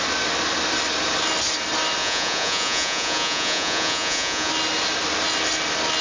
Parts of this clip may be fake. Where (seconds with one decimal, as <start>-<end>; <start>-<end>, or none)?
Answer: 2.0-4.5